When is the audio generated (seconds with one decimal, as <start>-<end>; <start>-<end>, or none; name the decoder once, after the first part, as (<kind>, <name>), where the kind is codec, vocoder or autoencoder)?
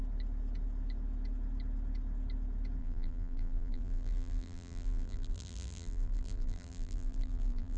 2.8-7.8 (vocoder, BigVGAN v2)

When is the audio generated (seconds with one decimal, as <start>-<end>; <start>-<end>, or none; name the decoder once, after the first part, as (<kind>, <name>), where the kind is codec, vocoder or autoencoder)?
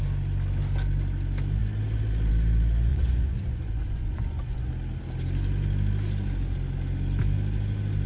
2.9-4.7 (vocoder, Vocos)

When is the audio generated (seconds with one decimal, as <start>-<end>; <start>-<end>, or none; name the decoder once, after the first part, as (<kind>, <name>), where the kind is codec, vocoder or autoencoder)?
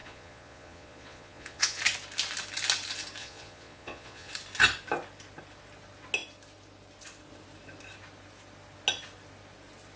0.0-1.8 (vocoder, Vocos); 3.2-4.3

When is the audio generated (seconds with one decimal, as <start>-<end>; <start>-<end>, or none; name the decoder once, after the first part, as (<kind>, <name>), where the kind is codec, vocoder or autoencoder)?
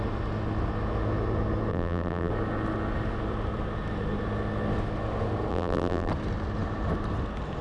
1.7-2.3 (vocoder, BigVGAN v2); 5.5-6.1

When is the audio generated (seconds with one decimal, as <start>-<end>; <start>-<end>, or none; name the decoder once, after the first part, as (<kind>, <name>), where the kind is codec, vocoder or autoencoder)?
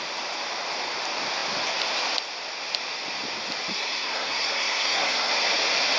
3.7-5.3 (codec, SNAC)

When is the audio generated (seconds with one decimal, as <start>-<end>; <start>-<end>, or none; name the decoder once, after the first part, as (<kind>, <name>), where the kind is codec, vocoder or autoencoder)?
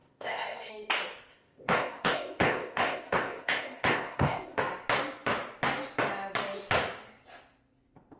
0.0-0.7 (codec, ZipCodec); 1.3-4.6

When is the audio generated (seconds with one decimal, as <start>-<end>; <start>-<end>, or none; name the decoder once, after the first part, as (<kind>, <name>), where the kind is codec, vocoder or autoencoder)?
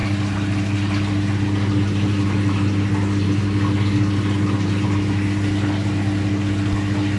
none